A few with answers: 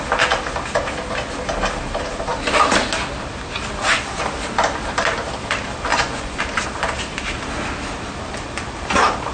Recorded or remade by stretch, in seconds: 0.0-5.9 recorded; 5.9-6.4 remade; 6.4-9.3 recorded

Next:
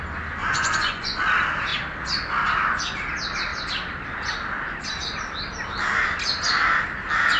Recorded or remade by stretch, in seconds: 0.0-0.4 recorded; 0.4-1.2 remade; 1.2-7.4 recorded

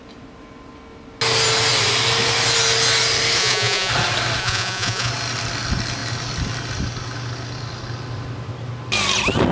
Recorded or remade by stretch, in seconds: 0.0-3.4 recorded; 3.4-3.9 remade; 3.9-4.4 recorded; 4.4-5.1 remade; 5.1-9.5 recorded

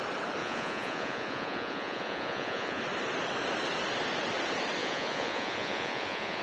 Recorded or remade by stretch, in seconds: 0.0-0.4 recorded; 0.4-2.8 remade; 2.8-4.8 recorded; 4.8-6.4 remade